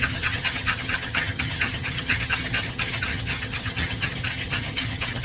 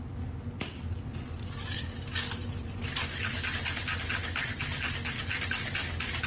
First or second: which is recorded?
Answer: second